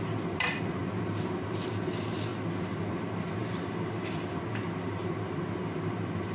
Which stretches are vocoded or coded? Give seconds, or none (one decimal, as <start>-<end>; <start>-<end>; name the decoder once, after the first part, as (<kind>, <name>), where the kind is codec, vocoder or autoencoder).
0.0-2.3 (vocoder, BigVGAN v2); 2.9-6.3